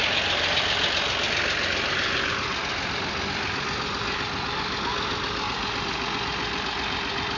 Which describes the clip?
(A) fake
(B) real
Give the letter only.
B